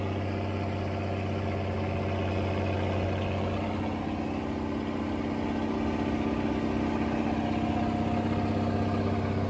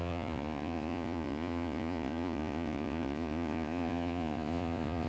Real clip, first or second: first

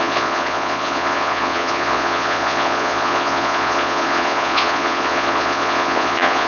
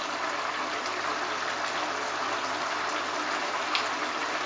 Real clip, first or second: second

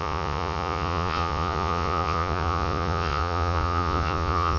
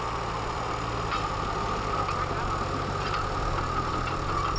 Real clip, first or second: second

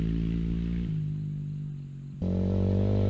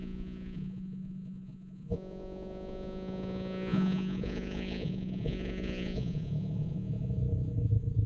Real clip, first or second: first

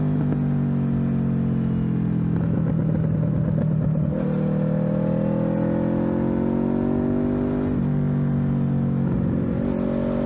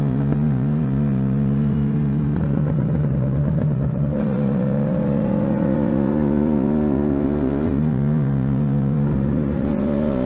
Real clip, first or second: first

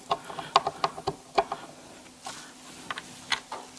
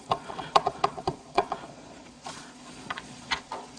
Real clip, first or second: first